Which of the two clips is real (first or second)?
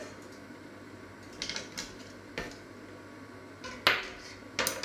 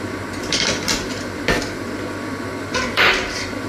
first